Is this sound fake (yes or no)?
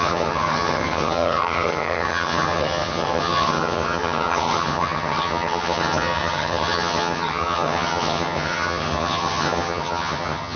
yes